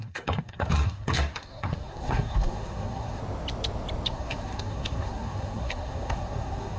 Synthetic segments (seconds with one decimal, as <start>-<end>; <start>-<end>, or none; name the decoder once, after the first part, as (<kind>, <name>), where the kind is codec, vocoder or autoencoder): 0.0-3.2 (codec, SNAC); 4.1-6.8